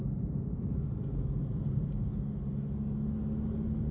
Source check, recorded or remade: recorded